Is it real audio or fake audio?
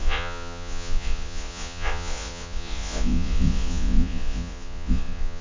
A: fake